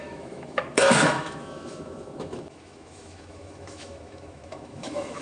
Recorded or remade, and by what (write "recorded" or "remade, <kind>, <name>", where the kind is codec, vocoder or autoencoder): remade, autoencoder, DAC-VAE